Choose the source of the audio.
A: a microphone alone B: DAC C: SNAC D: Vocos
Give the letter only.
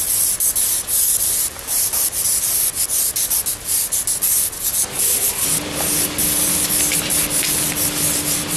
A